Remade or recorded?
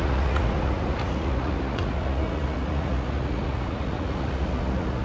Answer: remade